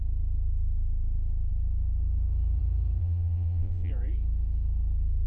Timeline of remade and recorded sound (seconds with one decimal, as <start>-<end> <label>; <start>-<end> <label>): 0.0-3.0 recorded; 3.0-3.9 remade; 3.9-5.3 recorded